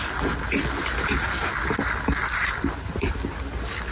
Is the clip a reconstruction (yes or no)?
no